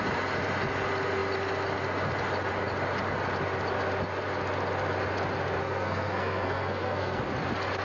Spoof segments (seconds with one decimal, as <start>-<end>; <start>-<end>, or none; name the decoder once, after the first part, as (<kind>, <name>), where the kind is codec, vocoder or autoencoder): 5.6-7.2 (codec, SNAC)